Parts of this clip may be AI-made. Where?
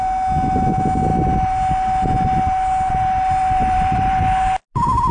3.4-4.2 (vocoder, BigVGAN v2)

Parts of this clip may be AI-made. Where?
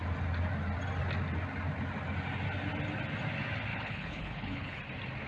3.7-4.8 (codec, HILCodec)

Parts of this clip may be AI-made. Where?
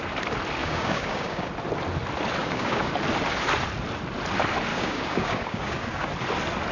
0.6-1.5 (codec, DAC); 2.4-2.9; 4.7-6.1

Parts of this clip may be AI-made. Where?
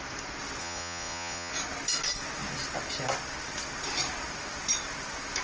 0.6-1.5 (vocoder, Vocos)